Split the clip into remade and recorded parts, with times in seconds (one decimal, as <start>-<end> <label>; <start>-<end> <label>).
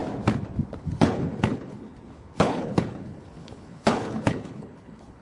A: 0.0-0.8 recorded; 0.8-5.2 remade